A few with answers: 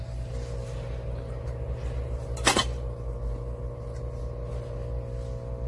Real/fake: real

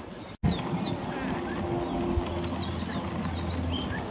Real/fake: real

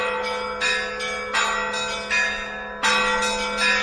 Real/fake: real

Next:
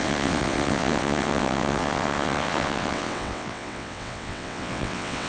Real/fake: fake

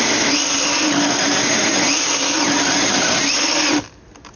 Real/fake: real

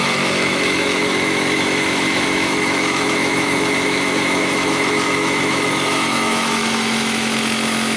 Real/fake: fake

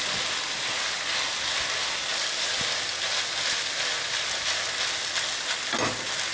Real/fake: real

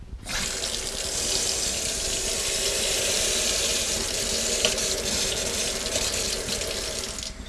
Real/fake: real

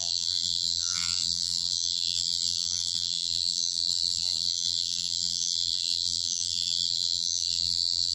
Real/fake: fake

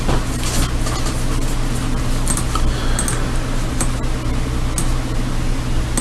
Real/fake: real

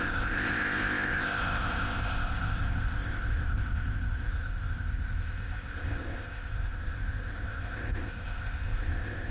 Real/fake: fake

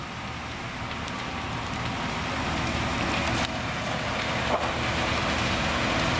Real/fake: real